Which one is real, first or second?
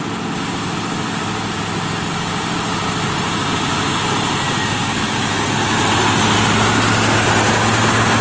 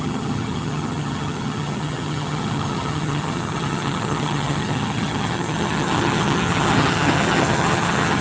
first